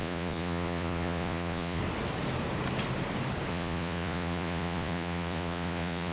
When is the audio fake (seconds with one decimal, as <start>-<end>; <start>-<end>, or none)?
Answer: 0.0-1.8; 3.5-6.1